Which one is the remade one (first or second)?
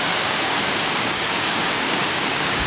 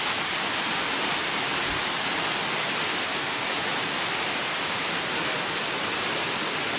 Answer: first